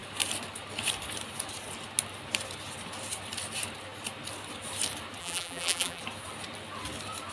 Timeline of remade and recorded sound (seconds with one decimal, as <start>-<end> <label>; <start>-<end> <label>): 0.0-5.2 recorded; 5.2-6.0 remade; 6.0-7.3 recorded